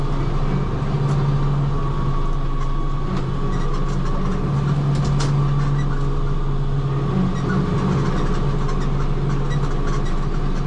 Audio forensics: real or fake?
real